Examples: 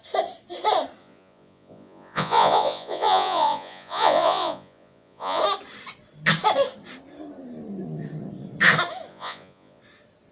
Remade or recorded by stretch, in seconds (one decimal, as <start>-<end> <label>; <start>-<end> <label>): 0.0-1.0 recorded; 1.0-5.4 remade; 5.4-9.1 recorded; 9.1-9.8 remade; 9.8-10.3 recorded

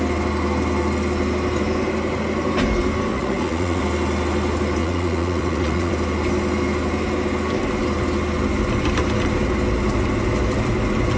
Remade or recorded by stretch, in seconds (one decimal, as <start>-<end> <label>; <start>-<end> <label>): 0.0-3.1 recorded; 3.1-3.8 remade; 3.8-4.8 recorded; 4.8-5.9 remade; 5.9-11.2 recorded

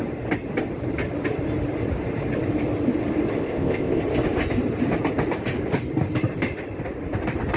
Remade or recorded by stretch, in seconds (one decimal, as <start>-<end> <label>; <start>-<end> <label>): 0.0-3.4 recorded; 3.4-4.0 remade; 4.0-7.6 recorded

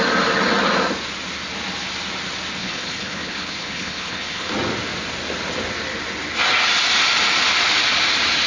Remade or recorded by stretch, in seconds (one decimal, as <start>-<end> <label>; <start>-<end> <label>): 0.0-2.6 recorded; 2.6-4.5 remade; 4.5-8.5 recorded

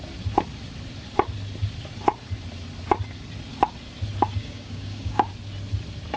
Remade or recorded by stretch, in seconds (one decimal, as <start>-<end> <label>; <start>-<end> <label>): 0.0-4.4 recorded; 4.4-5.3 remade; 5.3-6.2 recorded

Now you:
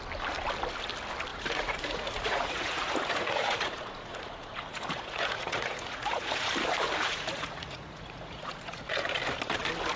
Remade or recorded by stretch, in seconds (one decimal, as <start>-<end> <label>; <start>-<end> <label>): 0.0-1.3 recorded; 1.3-6.5 remade; 6.5-7.0 recorded; 7.0-8.9 remade; 8.9-10.0 recorded